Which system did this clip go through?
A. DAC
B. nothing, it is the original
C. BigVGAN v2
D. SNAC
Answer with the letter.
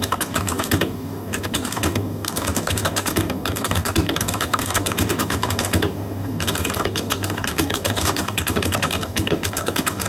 A